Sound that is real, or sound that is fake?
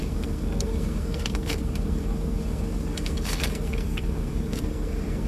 fake